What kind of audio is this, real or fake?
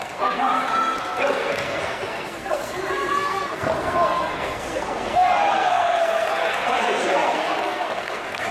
fake